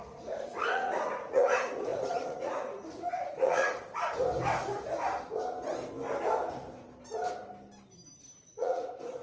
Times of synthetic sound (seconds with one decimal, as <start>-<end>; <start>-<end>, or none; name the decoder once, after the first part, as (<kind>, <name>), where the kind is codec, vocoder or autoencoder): 0.0-3.8 (vocoder, Vocos); 8.4-9.2